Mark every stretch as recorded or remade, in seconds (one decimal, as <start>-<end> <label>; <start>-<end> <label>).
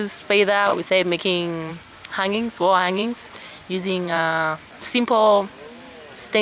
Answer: 0.0-0.7 recorded; 0.7-1.2 remade; 1.2-1.7 recorded; 1.7-5.5 remade; 5.5-6.4 recorded